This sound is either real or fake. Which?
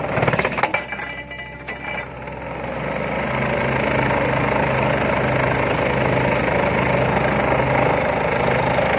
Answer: real